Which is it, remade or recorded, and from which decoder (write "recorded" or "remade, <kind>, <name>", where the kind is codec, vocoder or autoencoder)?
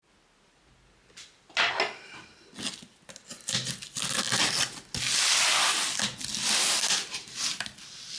recorded